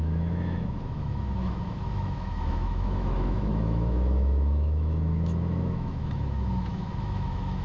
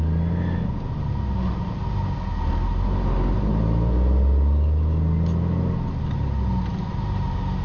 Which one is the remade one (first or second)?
first